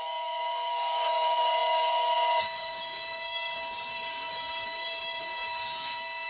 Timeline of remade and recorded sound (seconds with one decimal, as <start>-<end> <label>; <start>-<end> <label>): 0.0-6.3 remade